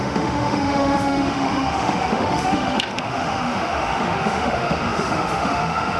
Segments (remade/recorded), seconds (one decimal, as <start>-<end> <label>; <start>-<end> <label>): 0.0-6.0 remade